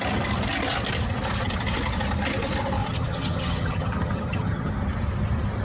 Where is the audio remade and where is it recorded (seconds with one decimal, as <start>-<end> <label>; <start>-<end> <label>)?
0.0-2.8 recorded; 2.8-4.7 remade; 4.7-5.6 recorded